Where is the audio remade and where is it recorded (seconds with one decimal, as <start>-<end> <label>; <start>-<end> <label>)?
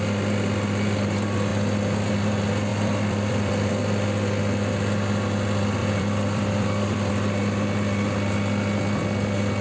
0.0-2.7 recorded; 2.7-3.7 remade; 3.7-5.8 recorded; 5.8-7.1 remade; 7.1-9.6 recorded